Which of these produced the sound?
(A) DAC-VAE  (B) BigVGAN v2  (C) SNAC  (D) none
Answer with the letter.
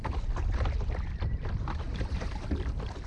D